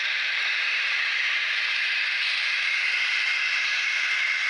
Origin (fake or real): fake